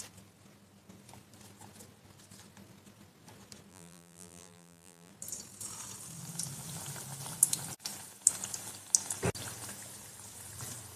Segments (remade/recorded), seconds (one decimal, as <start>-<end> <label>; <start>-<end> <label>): 0.0-3.7 recorded; 3.7-5.1 remade; 5.1-11.0 recorded